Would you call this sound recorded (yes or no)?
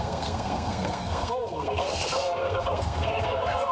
no